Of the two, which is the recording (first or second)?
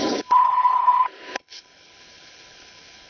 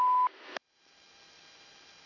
second